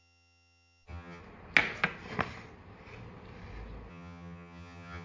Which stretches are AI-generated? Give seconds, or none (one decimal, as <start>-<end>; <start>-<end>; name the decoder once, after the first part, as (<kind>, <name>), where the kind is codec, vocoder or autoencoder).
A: 0.0-1.2 (vocoder, HiFi-GAN); 3.9-5.0